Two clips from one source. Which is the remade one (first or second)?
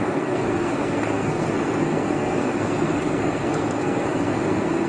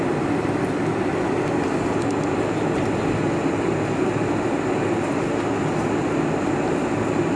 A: first